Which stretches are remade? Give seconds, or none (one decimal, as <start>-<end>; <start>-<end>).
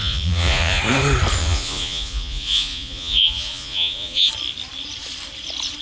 0.0-0.8; 1.4-4.3